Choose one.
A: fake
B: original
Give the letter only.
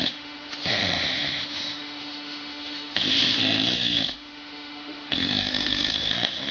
A